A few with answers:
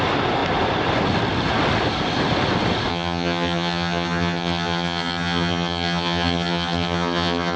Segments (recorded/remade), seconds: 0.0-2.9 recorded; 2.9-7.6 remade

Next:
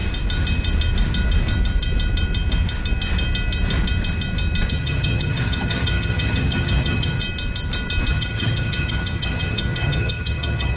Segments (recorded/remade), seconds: 0.0-4.7 recorded; 4.7-7.2 remade; 7.2-8.1 recorded; 8.1-10.8 remade

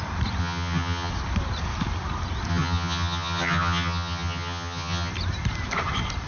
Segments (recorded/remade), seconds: 0.0-0.4 recorded; 0.4-1.1 remade; 1.1-2.5 recorded; 2.5-5.1 remade; 5.1-6.3 recorded